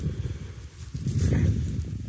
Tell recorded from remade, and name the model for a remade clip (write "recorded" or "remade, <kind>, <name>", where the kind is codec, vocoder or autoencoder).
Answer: recorded